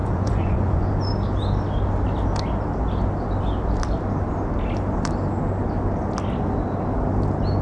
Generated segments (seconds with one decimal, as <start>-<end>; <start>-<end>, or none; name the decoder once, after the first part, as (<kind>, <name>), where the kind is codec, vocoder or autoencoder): 0.0-0.9 (vocoder, Vocos)

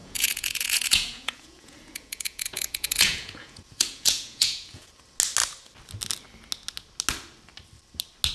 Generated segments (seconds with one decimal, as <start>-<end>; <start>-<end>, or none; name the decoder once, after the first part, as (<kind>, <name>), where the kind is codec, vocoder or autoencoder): 0.0-4.9 (vocoder, Vocos)

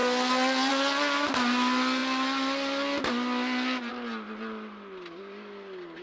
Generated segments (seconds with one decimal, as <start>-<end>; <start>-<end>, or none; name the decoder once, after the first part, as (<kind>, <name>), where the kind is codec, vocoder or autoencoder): none

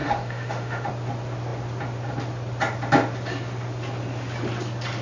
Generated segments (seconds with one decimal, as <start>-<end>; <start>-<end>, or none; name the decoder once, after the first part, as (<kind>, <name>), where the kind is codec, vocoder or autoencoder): 0.0-0.9 (autoencoder, DAC-VAE)

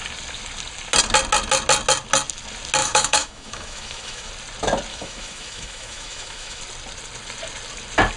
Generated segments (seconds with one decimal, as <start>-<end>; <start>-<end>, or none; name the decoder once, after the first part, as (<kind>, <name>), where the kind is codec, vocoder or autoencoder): 2.8-4.3 (autoencoder, DAC-VAE); 4.9-6.6

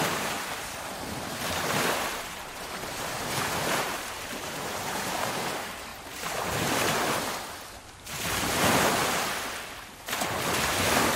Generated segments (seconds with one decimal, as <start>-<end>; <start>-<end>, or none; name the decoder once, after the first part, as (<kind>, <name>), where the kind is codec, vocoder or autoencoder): 0.0-5.9 (vocoder, BigVGAN v2)

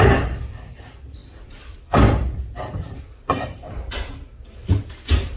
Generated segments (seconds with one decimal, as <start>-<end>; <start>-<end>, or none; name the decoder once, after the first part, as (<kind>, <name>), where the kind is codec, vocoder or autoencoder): 1.2-3.0 (vocoder, BigVGAN v2)